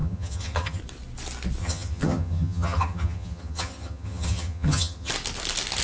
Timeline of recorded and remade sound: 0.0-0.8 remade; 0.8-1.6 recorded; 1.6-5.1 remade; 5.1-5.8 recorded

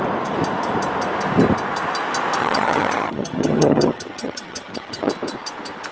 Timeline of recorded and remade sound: 0.0-2.4 recorded; 2.4-5.1 remade; 5.1-5.9 recorded

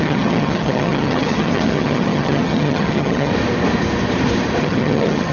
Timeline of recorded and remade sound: 0.0-3.3 remade; 3.3-4.6 recorded; 4.6-5.3 remade

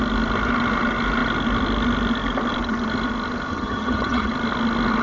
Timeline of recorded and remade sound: 0.0-3.5 recorded; 3.5-4.3 remade; 4.3-5.0 recorded

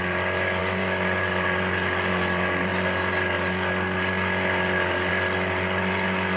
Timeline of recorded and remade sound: 0.0-6.4 recorded

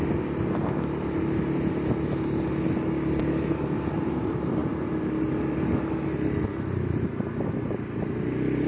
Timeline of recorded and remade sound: 0.0-8.7 recorded

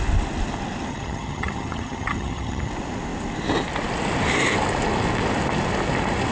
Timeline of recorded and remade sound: 0.0-0.9 recorded; 0.9-2.7 remade; 2.7-6.3 recorded

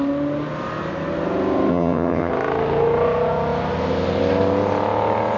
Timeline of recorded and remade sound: 0.0-1.7 recorded; 1.7-2.3 remade; 2.3-5.4 recorded